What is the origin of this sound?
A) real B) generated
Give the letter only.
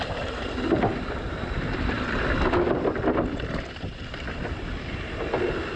A